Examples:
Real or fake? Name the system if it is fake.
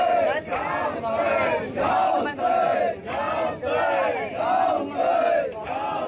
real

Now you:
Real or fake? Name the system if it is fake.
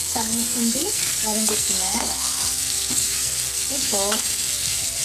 fake, codec, SNAC